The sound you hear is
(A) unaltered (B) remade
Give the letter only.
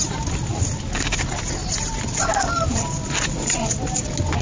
A